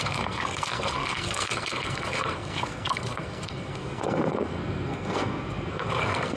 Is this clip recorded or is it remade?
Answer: remade